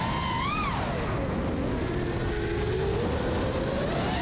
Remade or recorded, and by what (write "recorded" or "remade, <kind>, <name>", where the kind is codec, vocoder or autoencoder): recorded